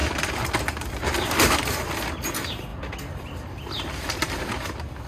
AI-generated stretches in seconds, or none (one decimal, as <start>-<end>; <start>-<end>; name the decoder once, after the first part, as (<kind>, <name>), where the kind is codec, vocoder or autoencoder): 0.0-1.5 (vocoder, BigVGAN v2)

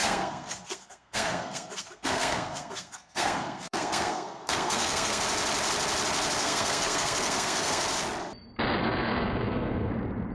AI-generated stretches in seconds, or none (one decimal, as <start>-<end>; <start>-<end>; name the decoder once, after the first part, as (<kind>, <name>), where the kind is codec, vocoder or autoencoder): 0.0-5.2 (codec, SNAC); 6.4-7.8; 8.8-9.9